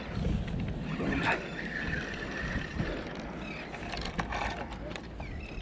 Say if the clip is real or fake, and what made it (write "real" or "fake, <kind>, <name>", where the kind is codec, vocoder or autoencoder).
real